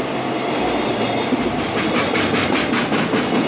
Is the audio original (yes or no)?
yes